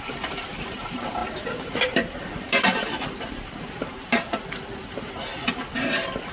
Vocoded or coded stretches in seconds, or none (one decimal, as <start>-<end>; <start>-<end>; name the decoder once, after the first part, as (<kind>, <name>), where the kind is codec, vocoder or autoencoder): 0.0-5.3 (vocoder, BigVGAN v2)